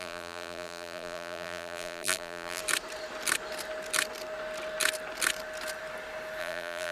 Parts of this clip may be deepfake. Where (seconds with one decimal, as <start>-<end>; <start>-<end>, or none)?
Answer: 0.0-2.6; 6.4-6.9